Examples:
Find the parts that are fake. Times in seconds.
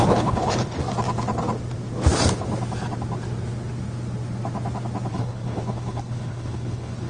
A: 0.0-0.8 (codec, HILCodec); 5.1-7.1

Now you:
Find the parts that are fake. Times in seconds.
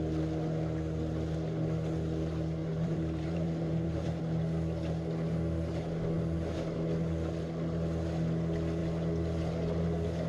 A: 2.6-4.2 (vocoder, BigVGAN v2)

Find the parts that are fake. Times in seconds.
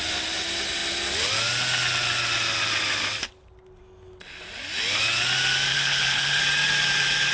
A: 5.7-6.4 (codec, HILCodec)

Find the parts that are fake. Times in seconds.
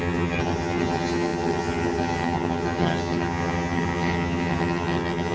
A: 0.0-5.3 (vocoder, HiFi-GAN)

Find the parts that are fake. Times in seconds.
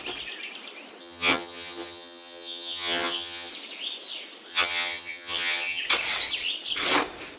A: 1.0-3.5 (vocoder, HiFi-GAN); 4.5-5.8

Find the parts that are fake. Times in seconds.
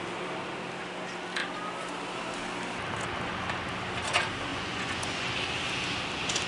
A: 4.5-5.3 (vocoder, Vocos)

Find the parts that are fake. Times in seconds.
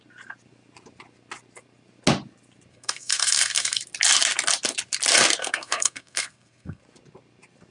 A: 2.7-3.8 (codec, SNAC); 5.4-6.8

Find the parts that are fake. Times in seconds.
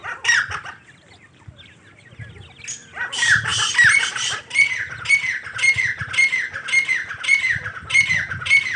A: none